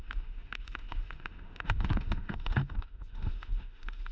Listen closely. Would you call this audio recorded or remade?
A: remade